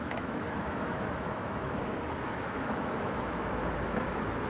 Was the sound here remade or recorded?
remade